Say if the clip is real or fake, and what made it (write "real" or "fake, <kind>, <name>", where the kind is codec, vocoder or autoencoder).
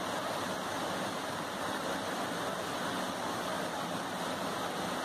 real